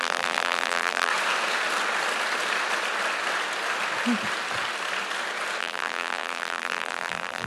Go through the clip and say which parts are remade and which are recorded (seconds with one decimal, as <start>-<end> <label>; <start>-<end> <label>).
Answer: 0.0-1.1 remade; 1.1-5.6 recorded; 5.6-7.5 remade